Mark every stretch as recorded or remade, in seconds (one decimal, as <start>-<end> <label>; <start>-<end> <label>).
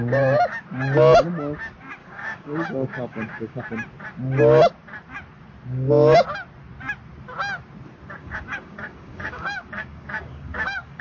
0.0-2.0 recorded; 2.0-3.6 remade; 3.6-8.2 recorded; 8.2-11.0 remade